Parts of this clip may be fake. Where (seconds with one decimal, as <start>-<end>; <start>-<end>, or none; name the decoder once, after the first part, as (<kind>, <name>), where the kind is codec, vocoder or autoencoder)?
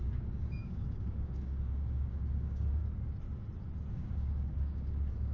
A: 0.0-2.8 (codec, DAC); 3.9-5.3